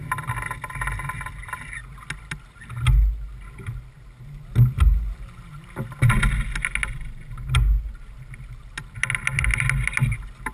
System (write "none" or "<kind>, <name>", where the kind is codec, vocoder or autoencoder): none